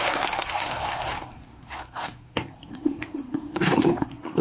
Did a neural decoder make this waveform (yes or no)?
yes